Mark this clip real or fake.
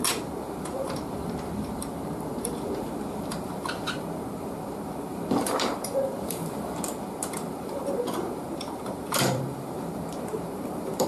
fake